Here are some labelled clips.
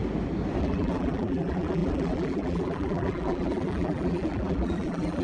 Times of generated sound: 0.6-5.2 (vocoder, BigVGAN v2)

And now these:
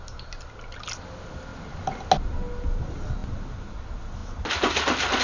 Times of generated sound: 1.5-2.1 (vocoder, BigVGAN v2)

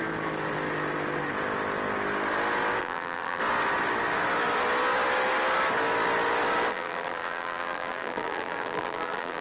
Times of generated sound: 2.8-3.4 (vocoder, BigVGAN v2); 6.7-9.4

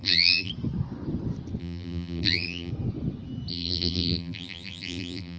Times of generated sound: 0.0-0.5 (vocoder, BigVGAN v2); 1.6-2.7; 3.5-5.4

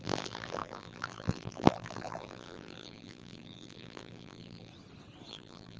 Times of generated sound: 0.0-4.7 (vocoder, BigVGAN v2); 5.3-5.8